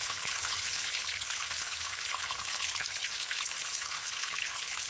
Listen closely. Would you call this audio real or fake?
fake